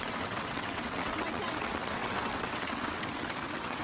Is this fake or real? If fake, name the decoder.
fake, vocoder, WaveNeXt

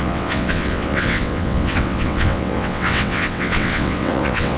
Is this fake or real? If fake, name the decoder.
fake, vocoder, WaveNeXt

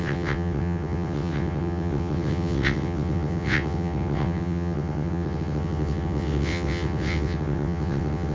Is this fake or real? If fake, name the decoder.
fake, vocoder, WaveNeXt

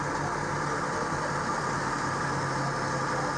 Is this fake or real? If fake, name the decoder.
real